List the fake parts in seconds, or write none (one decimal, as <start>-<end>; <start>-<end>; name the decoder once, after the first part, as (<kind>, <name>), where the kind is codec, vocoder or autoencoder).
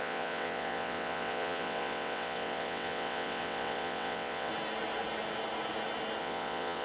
0.0-4.5 (vocoder, WaveNeXt); 6.2-6.8